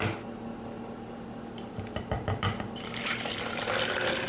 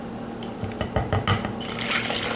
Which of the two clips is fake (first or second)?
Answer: first